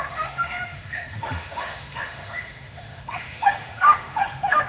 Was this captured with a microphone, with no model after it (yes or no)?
no